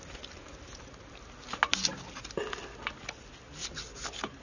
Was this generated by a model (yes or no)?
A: no